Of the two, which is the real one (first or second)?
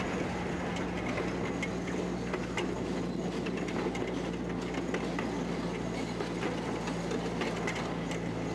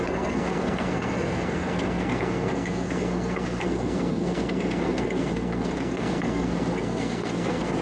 first